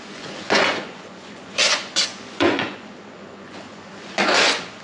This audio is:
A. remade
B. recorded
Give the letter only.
A